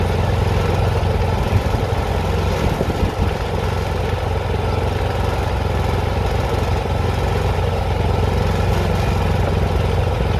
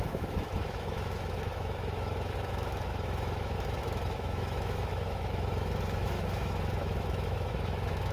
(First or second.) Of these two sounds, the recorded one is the first